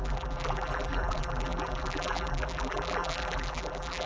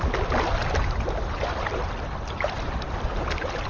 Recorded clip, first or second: second